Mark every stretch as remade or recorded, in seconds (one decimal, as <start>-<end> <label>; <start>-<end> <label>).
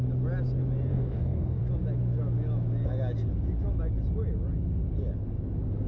0.0-0.9 recorded; 0.9-1.6 remade; 1.6-5.9 recorded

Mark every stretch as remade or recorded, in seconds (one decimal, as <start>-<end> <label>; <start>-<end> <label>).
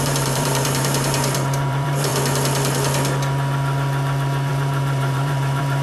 0.0-2.1 remade; 2.1-4.5 recorded; 4.5-5.8 remade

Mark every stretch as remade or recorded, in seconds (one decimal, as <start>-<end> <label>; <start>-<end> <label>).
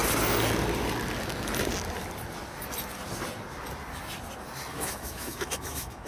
0.0-4.7 recorded; 4.7-6.1 remade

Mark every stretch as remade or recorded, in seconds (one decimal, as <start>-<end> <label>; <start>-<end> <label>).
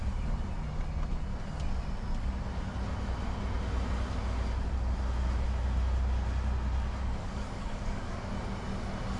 0.0-7.0 recorded; 7.0-8.3 remade; 8.3-9.2 recorded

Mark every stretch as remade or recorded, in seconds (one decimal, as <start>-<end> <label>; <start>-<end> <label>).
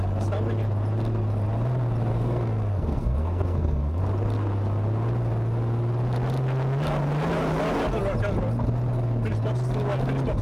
0.0-2.1 recorded; 2.1-4.0 remade; 4.0-10.4 recorded